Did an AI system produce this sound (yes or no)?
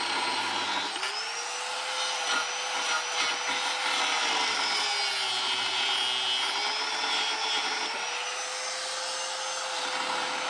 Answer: no